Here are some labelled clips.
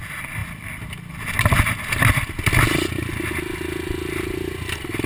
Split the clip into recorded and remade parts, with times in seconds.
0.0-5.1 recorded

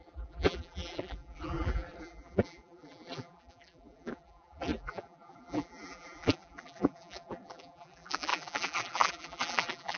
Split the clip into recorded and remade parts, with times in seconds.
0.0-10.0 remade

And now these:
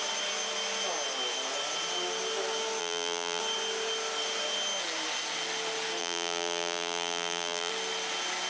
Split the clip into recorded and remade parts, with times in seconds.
0.0-2.8 recorded; 2.8-3.4 remade; 3.4-6.0 recorded; 6.0-7.7 remade; 7.7-8.5 recorded

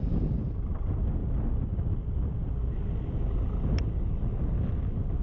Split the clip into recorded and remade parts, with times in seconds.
0.0-1.2 recorded; 1.2-3.7 remade; 3.7-5.2 recorded

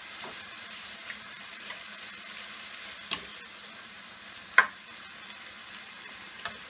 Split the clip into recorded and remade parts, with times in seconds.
0.0-1.7 remade; 1.7-5.7 recorded; 5.7-6.7 remade